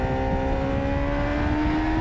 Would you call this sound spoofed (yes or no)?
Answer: no